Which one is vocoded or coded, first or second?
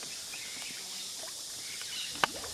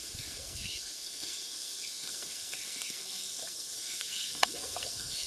second